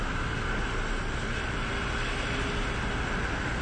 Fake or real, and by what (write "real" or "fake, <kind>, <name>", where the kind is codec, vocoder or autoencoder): real